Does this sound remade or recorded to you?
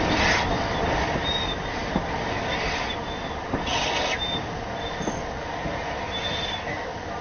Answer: recorded